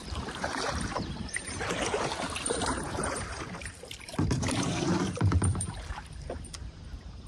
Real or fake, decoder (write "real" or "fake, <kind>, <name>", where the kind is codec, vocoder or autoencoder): fake, vocoder, BigVGAN v2